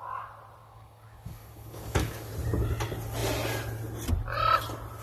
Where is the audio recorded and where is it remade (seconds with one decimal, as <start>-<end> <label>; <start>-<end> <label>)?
0.0-0.6 recorded; 0.6-2.3 remade; 2.3-5.0 recorded